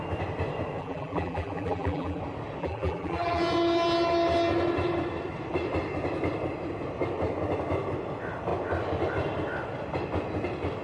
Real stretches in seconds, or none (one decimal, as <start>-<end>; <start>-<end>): 0.0-0.8; 2.2-2.6; 3.4-10.8